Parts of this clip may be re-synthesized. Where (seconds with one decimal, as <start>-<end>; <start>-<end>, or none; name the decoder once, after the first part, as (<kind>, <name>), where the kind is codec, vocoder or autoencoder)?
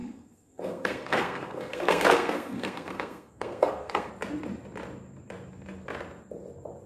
0.0-4.1 (codec, SNAC)